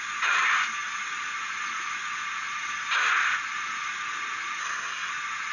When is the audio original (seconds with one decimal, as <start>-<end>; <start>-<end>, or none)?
0.0-4.6; 5.1-5.5